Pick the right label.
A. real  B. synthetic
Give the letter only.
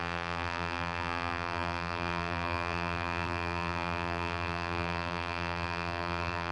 B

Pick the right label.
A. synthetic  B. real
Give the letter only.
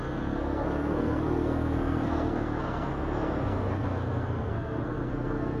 A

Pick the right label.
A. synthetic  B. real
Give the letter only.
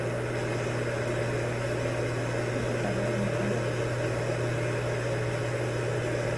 B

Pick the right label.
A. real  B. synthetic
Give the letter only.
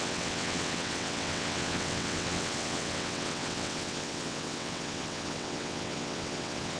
B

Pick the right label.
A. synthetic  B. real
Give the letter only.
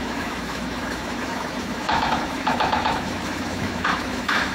A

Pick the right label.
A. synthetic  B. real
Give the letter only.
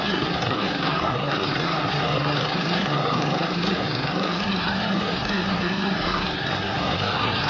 A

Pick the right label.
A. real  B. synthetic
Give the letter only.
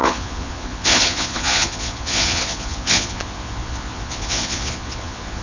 B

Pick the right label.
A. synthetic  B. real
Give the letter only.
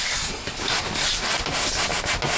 B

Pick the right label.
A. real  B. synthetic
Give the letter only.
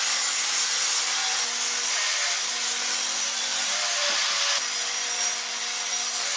A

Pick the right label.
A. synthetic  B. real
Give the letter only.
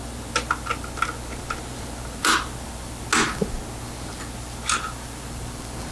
B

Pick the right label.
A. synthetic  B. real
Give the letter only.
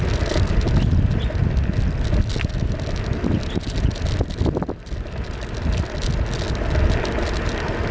B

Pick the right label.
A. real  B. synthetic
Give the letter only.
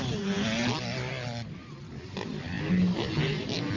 A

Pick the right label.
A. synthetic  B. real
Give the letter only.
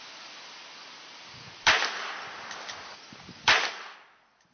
B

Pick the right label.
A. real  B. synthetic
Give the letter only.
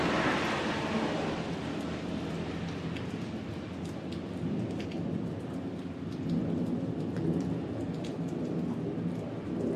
A